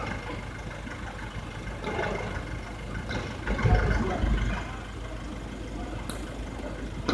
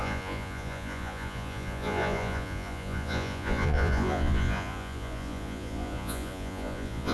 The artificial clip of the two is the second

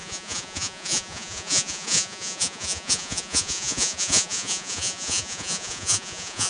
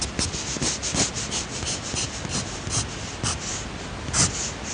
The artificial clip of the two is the first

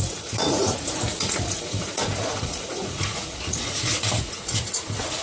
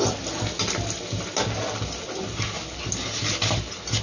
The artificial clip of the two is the first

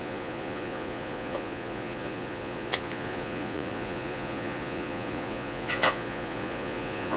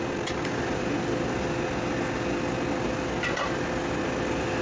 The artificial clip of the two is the first